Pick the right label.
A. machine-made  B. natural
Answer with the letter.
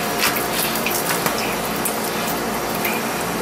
B